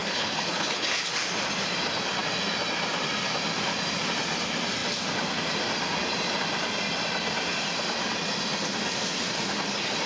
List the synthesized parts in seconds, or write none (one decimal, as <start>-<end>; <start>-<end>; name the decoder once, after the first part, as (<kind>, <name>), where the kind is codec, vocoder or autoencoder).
0.0-1.1 (codec, HILCodec)